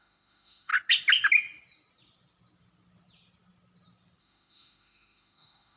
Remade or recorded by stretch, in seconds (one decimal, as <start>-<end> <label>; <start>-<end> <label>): 0.0-0.7 remade; 0.7-4.2 recorded; 4.2-5.8 remade